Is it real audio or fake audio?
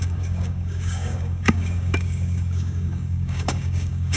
fake